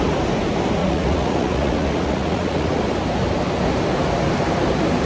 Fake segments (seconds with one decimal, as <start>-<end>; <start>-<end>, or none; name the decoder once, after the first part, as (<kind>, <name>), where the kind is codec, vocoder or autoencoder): 0.8-2.8 (vocoder, Vocos)